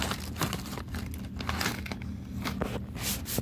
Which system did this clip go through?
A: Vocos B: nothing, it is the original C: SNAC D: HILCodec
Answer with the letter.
B